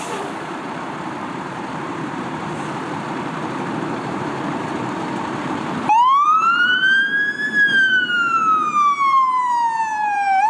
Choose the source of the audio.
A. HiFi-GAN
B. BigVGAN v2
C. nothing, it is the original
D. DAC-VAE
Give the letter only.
B